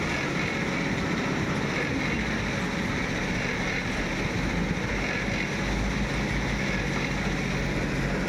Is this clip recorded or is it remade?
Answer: recorded